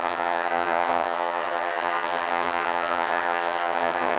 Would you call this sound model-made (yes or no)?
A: yes